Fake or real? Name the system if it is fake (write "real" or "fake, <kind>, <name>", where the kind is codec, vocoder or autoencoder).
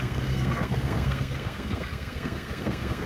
fake, codec, SNAC